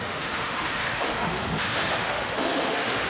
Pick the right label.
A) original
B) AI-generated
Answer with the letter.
B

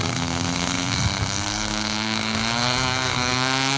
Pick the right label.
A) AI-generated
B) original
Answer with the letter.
A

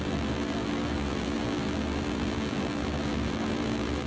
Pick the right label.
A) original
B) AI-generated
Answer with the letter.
B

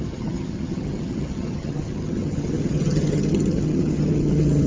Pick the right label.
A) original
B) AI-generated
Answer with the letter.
B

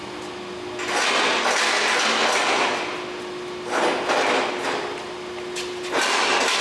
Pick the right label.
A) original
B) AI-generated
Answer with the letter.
A